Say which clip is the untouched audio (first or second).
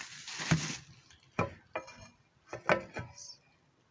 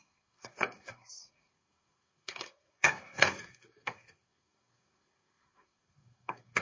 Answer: first